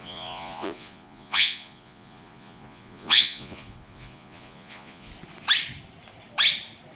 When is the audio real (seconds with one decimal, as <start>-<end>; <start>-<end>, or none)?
5.1-7.0